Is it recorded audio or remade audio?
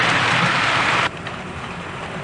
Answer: remade